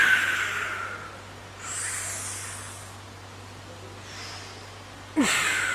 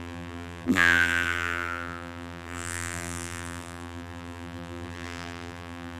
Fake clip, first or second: second